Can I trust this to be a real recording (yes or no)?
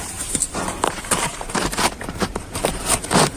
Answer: no